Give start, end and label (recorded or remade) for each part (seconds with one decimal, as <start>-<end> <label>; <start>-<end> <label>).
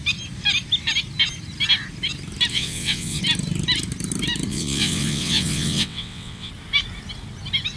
0.0-2.5 recorded; 2.5-3.2 remade; 3.2-4.5 recorded; 4.5-6.5 remade; 6.5-7.8 recorded